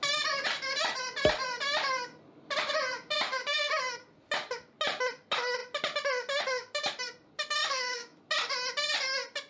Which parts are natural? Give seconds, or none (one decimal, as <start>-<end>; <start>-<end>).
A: 0.0-3.3; 3.8-7.6; 8.3-9.5